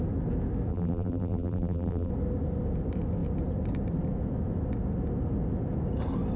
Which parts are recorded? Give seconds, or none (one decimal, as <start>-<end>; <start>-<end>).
0.0-0.7; 2.1-6.4